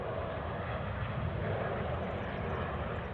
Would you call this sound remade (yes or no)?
no